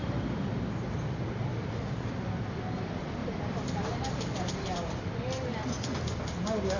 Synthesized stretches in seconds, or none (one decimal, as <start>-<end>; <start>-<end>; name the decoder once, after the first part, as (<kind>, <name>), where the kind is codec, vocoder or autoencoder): none

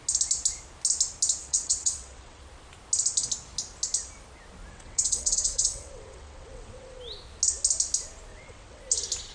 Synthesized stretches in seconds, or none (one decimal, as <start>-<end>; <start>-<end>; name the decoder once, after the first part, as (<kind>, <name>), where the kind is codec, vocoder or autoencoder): 1.4-2.4 (vocoder, WaveNeXt); 4.7-7.0; 8.3-8.8

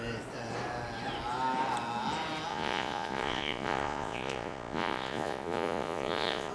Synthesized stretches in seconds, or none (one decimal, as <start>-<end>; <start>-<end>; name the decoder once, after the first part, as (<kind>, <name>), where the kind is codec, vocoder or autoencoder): 2.5-6.5 (vocoder, Vocos)

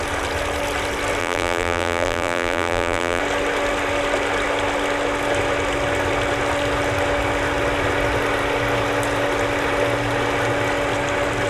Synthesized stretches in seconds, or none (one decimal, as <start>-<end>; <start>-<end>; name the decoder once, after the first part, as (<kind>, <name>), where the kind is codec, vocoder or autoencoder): 1.2-3.2 (vocoder, BigVGAN v2)

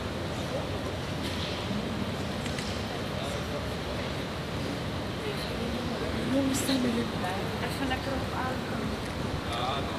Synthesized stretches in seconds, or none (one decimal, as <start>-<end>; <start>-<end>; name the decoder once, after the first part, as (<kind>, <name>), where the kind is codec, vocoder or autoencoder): 8.1-10.0 (vocoder, BigVGAN v2)